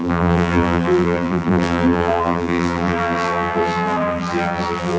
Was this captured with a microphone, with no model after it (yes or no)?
no